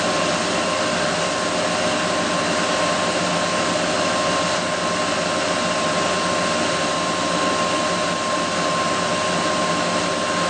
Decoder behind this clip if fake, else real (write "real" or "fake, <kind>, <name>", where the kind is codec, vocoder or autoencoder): real